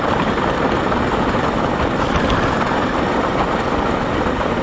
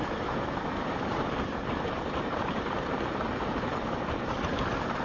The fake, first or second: second